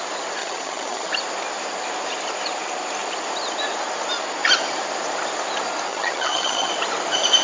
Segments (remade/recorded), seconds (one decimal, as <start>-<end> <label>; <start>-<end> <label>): 0.0-0.4 recorded; 0.4-1.1 remade; 1.1-5.9 recorded; 5.9-6.7 remade; 6.7-7.4 recorded